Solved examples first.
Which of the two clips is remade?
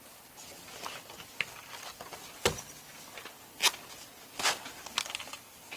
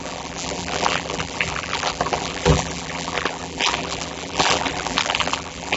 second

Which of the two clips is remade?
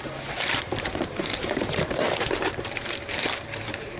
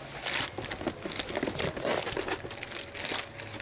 first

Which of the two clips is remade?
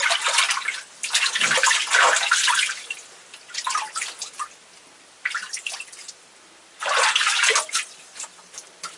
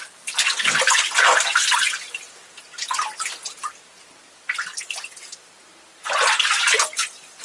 first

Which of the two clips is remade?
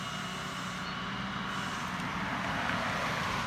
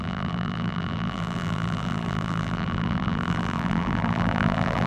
second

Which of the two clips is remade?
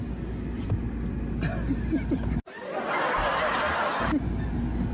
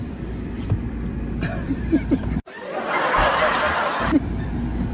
second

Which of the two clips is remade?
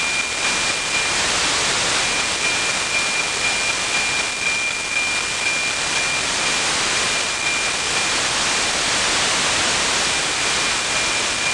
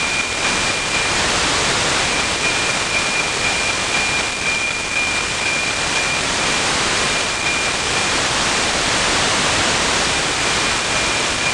second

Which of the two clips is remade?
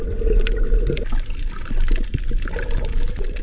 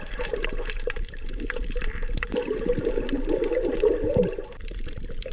second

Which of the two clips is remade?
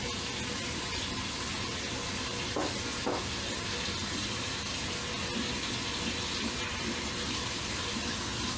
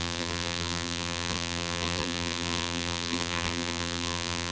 second